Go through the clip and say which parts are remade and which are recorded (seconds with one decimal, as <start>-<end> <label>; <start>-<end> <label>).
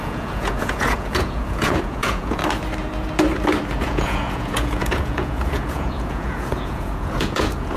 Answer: 0.0-2.4 remade; 2.4-3.8 recorded; 3.8-7.8 remade